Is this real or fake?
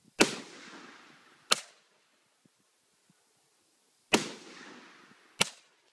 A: real